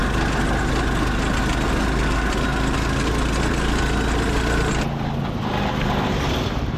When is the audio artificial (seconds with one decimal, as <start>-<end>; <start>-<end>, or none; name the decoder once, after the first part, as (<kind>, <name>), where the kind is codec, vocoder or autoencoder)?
none